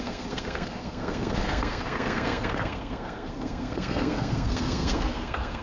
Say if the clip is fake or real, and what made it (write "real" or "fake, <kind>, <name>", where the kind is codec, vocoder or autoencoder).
fake, codec, SNAC